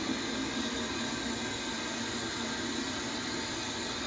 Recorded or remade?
recorded